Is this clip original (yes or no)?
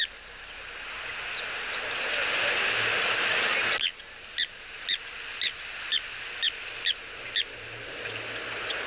yes